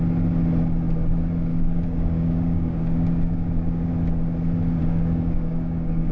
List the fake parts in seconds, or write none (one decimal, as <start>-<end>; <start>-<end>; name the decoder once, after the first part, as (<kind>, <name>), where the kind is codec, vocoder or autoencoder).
1.5-3.9 (codec, DAC); 4.8-6.1